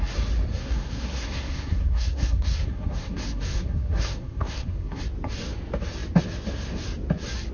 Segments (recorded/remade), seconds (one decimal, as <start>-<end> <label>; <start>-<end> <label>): 0.0-0.5 recorded; 0.5-5.0 remade; 5.0-7.5 recorded